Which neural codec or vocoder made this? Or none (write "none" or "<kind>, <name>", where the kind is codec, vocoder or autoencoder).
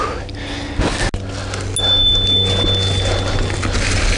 none